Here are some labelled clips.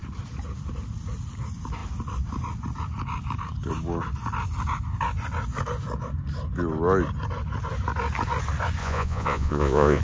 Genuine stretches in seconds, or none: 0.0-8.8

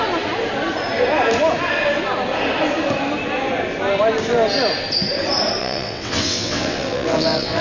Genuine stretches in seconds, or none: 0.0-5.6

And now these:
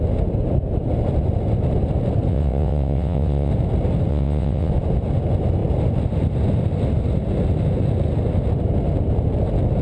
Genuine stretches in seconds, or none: 0.0-2.3; 3.5-4.1; 4.7-9.8